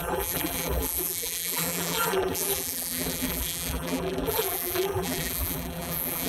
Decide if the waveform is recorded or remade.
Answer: remade